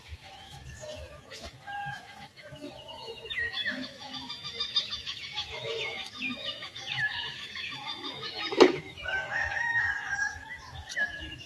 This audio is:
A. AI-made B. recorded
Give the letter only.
A